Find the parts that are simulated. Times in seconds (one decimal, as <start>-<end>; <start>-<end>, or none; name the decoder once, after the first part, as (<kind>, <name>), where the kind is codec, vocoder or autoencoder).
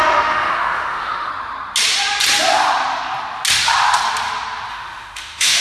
0.0-1.3 (autoencoder, DAC-VAE); 4.7-5.6